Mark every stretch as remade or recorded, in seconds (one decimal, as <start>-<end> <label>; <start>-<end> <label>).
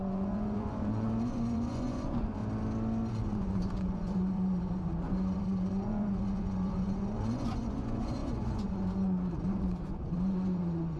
0.0-2.4 remade; 2.4-3.1 recorded; 3.1-11.0 remade